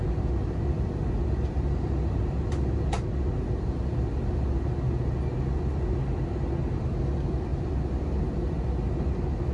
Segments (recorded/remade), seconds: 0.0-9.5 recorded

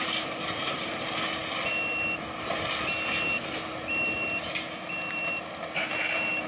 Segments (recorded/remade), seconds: 0.0-6.5 recorded

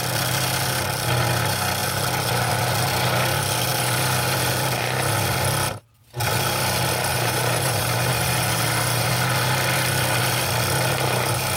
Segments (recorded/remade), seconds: 0.0-7.1 recorded; 7.1-9.1 remade; 9.1-11.6 recorded